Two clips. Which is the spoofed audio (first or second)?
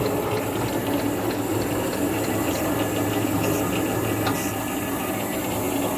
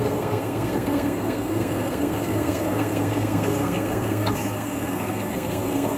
second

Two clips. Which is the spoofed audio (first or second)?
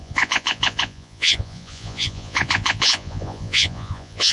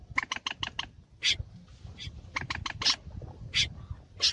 first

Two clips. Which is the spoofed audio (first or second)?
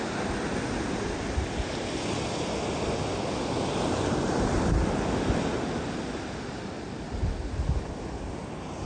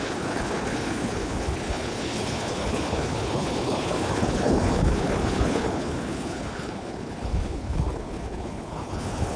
second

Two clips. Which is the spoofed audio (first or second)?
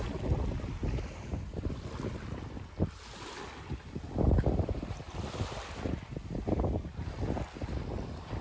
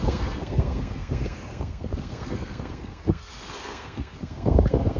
second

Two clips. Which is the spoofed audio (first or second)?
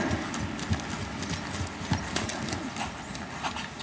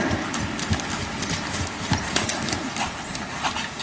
second